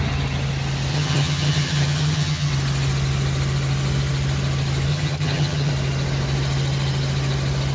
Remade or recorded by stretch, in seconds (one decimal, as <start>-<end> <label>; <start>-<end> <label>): 0.0-0.9 recorded; 0.9-2.5 remade; 2.5-4.9 recorded; 4.9-5.7 remade; 5.7-7.7 recorded